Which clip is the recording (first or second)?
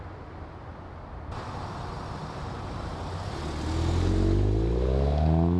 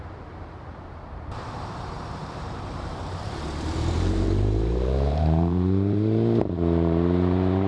first